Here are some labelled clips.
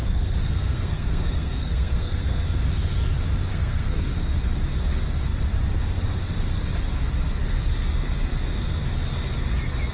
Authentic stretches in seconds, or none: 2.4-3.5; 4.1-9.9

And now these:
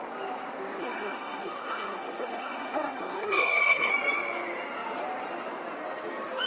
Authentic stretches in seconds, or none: 0.0-0.8; 3.9-6.5

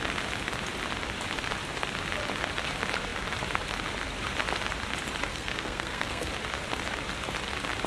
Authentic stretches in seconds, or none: 0.0-5.3; 6.3-7.9

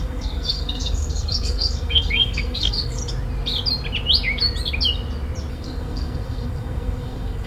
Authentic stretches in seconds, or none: 3.0-5.5